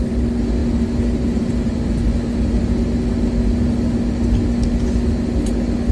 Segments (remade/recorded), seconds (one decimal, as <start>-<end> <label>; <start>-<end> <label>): 0.0-5.9 recorded